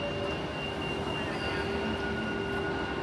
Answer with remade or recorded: recorded